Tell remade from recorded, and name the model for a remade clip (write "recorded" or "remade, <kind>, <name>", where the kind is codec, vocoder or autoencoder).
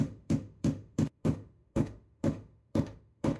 remade, autoencoder, DAC-VAE